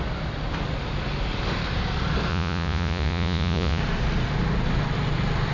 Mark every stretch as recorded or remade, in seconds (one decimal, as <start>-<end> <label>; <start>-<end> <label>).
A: 0.0-2.3 recorded; 2.3-3.8 remade; 3.8-5.5 recorded